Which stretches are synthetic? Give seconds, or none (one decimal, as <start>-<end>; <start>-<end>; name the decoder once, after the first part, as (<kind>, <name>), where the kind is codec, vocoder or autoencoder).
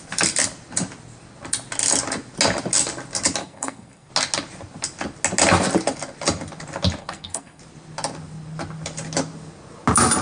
3.4-4.1 (codec, SNAC); 7.0-7.6